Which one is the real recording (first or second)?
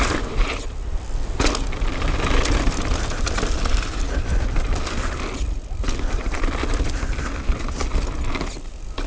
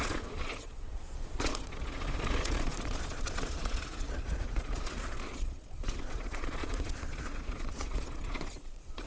first